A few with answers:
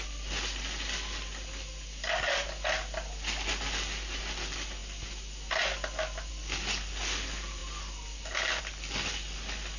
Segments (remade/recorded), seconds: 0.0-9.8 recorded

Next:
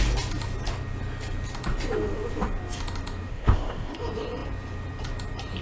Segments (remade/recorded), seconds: 0.0-3.3 recorded; 3.3-4.0 remade; 4.0-5.6 recorded

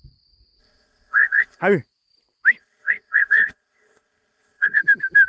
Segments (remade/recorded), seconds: 0.0-0.6 recorded; 0.6-1.6 remade; 1.6-2.6 recorded; 2.6-4.8 remade; 4.8-5.3 recorded